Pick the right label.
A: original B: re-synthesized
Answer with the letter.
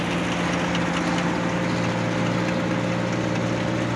A